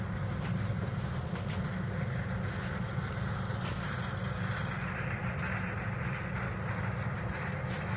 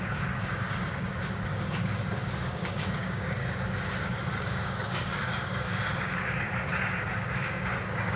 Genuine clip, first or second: first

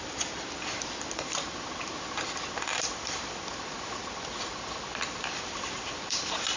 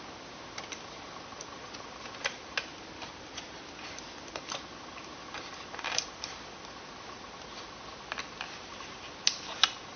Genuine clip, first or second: second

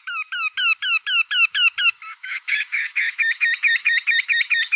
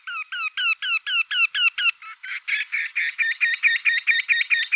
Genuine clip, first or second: second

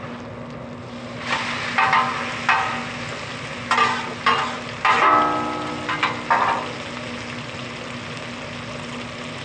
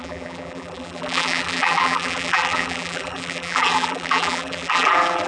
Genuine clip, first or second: first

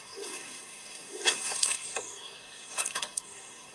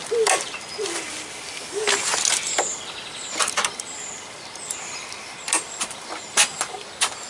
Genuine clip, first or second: second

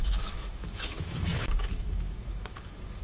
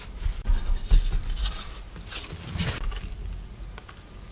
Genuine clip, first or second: second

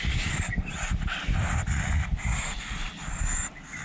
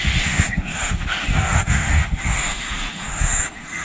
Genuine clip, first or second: first